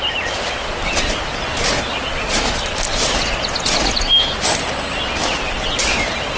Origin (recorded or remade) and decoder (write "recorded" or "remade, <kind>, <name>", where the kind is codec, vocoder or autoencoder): recorded